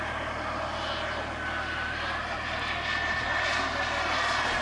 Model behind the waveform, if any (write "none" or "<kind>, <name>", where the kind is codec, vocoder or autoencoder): none